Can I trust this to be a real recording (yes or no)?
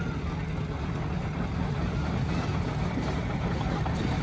yes